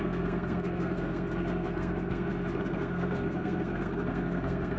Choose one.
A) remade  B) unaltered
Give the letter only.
A